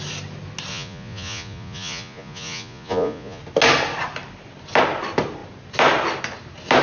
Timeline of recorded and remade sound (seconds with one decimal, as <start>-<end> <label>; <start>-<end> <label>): 0.0-0.7 recorded; 0.7-3.4 remade; 3.4-6.8 recorded